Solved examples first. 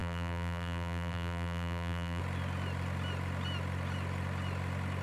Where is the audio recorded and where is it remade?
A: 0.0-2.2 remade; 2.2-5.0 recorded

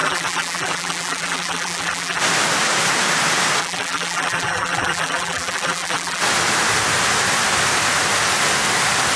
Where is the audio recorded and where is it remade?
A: 0.0-2.2 remade; 2.2-3.6 recorded; 3.6-6.2 remade; 6.2-9.2 recorded

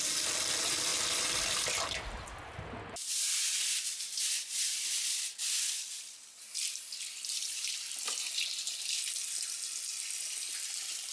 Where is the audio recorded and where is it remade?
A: 0.0-11.1 recorded